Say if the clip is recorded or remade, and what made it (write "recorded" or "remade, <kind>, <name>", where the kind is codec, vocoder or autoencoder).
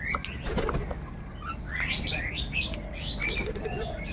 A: recorded